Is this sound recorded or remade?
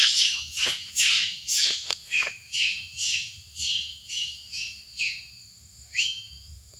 remade